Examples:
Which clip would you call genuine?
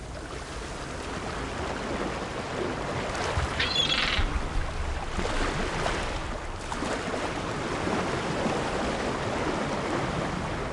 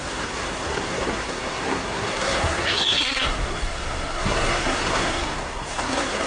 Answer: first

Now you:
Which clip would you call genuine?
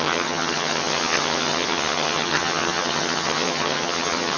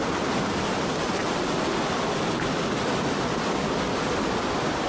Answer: second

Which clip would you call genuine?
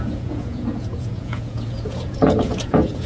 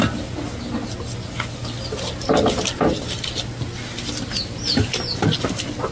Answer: second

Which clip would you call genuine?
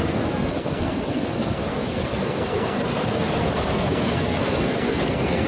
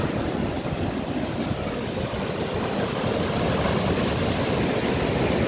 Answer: second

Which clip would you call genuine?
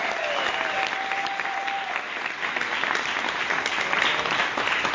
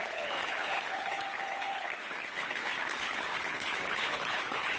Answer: first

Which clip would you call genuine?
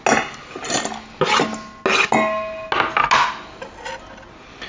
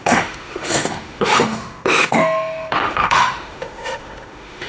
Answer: first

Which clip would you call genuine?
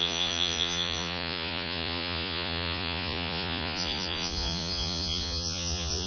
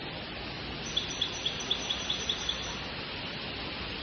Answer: second